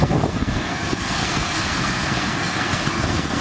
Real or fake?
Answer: fake